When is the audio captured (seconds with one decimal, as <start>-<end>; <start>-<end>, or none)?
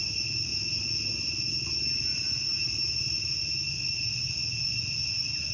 0.0-5.5